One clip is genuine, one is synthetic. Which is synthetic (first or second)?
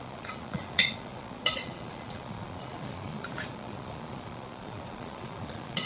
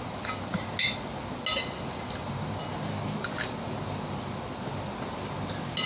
first